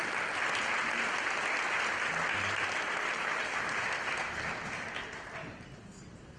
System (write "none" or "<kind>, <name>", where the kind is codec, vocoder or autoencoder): none